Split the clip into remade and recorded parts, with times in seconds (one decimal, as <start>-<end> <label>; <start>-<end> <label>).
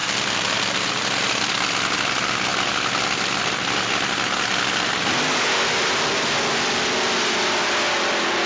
0.0-8.5 recorded